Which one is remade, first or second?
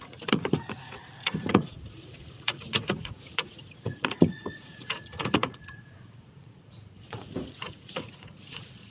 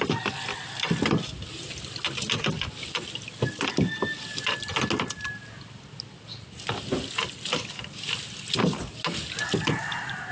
first